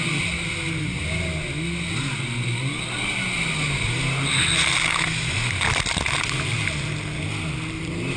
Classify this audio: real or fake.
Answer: real